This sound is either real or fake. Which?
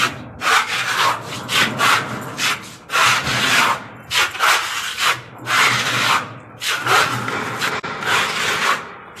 real